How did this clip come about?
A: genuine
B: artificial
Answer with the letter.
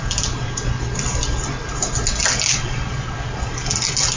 A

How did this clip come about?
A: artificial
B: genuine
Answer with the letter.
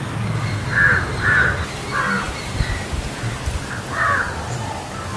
B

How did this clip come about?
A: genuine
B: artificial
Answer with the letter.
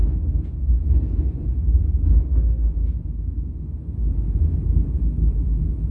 A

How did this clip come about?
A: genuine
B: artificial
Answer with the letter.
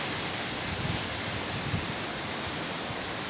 A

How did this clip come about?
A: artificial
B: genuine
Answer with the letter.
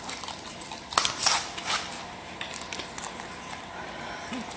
B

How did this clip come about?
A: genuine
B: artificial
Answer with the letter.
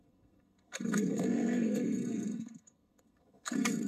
B